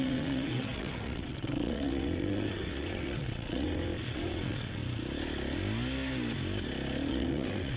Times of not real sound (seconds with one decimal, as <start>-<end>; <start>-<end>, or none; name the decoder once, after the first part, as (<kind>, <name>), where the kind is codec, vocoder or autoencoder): 0.0-4.8 (vocoder, WaveNeXt); 7.1-7.8